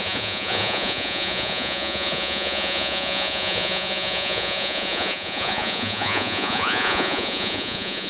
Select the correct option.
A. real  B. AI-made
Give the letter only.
B